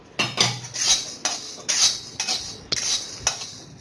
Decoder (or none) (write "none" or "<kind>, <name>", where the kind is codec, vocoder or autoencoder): none